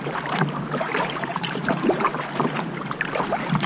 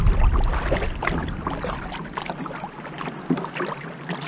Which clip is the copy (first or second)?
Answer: first